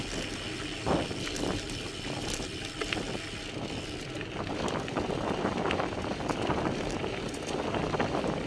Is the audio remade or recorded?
recorded